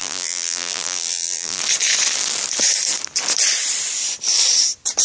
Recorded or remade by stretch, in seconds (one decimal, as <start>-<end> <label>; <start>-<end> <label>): 0.0-1.6 remade; 1.6-5.0 recorded

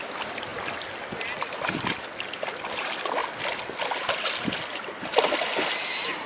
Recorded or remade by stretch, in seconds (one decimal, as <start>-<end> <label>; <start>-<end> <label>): 0.0-6.3 recorded

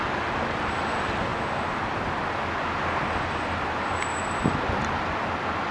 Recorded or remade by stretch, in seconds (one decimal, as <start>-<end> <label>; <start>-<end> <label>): 0.0-5.7 recorded

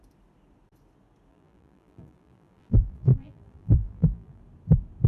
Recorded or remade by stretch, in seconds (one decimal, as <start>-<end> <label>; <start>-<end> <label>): 0.0-1.3 recorded; 1.3-4.4 remade; 4.4-5.1 recorded